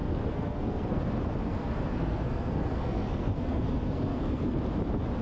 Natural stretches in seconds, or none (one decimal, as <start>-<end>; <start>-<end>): 1.0-1.5; 4.6-5.2